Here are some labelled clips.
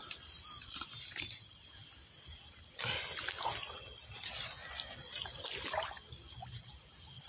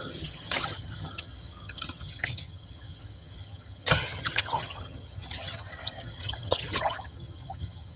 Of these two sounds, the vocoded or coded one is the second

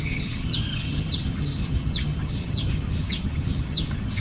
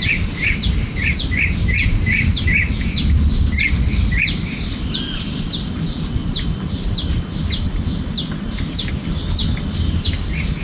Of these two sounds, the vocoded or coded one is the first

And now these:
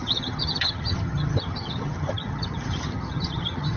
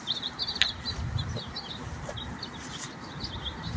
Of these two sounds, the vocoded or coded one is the first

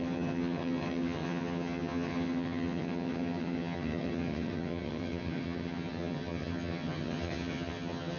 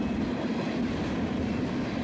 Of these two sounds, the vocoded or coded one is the first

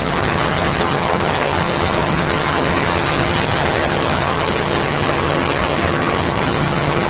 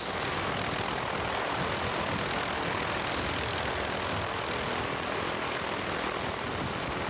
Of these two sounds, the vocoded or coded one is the first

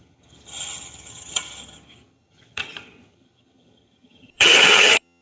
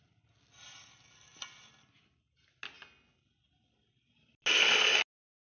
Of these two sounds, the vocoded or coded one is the first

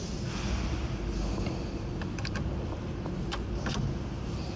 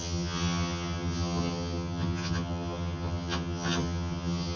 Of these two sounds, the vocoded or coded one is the second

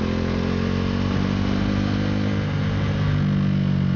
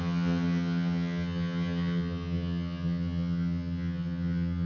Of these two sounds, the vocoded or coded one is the second